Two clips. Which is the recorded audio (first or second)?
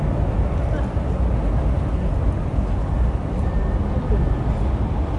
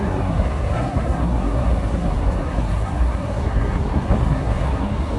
first